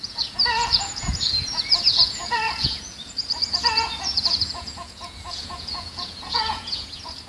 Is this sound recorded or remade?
remade